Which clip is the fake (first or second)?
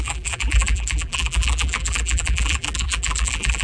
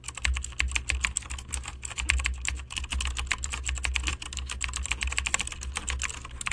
first